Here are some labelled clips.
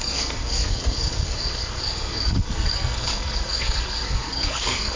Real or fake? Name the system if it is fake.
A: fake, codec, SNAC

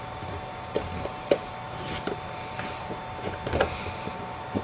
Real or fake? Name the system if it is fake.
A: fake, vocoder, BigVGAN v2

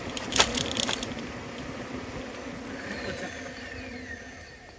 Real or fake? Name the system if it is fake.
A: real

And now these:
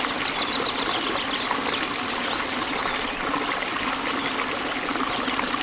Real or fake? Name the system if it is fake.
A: real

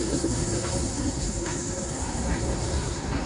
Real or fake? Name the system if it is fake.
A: fake, codec, SNAC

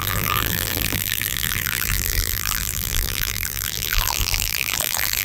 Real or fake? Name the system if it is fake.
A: fake, vocoder, BigVGAN v2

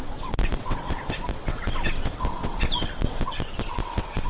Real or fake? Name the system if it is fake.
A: fake, vocoder, WaveNeXt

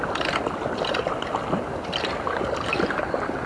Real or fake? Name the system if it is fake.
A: real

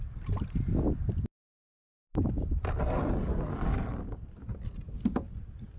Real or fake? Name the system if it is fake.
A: real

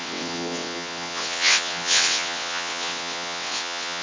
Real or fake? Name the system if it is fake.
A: fake, vocoder, WaveNeXt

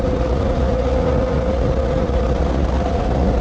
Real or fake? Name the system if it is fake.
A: fake, vocoder, Vocos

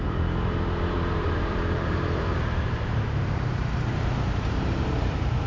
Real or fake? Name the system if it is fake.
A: fake, vocoder, BigVGAN v2